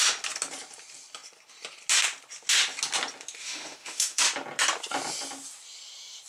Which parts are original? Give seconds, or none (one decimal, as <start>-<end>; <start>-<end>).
0.0-3.4; 4.2-6.3